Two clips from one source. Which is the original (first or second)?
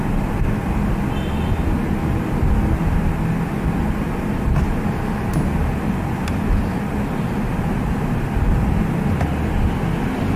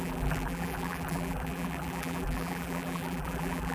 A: first